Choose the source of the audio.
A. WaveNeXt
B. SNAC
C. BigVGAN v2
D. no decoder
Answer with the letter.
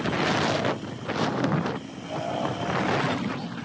D